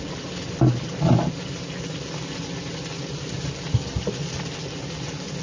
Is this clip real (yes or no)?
yes